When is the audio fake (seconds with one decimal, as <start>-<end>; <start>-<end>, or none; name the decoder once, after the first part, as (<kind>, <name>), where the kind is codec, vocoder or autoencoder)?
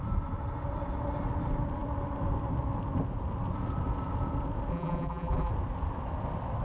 4.7-5.5 (vocoder, BigVGAN v2)